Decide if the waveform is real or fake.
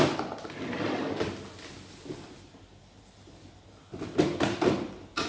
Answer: real